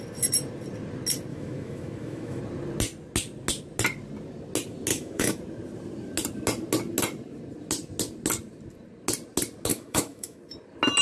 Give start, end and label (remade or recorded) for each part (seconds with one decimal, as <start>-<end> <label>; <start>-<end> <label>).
0.0-1.3 recorded; 1.3-2.4 remade; 2.4-4.9 recorded; 4.9-5.4 remade; 5.4-9.7 recorded; 9.7-10.4 remade; 10.4-11.0 recorded